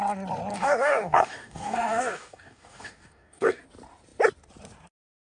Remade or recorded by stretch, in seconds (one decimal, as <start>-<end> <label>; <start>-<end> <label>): 0.0-0.5 recorded; 0.5-3.6 remade; 3.6-5.2 recorded